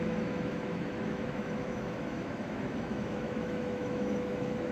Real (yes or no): no